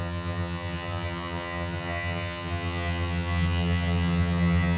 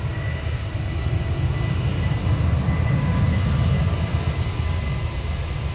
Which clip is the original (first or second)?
second